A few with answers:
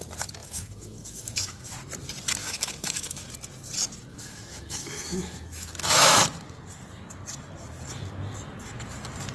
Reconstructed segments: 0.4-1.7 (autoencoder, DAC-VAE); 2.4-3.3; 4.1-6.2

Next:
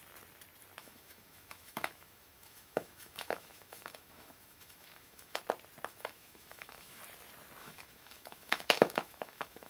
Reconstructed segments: 0.8-5.4 (autoencoder, DAC-VAE); 5.9-7.0; 7.6-9.7

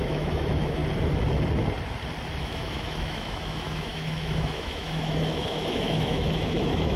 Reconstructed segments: 0.0-0.8 (autoencoder, DAC-VAE); 2.4-7.0

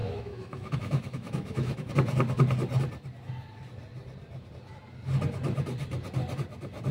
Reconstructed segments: 0.0-1.9 (autoencoder, DAC-VAE)